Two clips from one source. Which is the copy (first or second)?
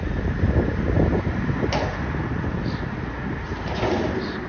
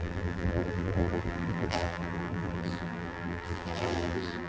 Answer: second